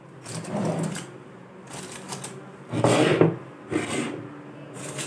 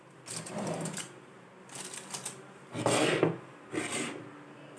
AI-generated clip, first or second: second